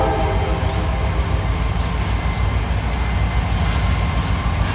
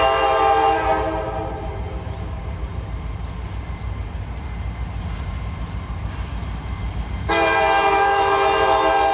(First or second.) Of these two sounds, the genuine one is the first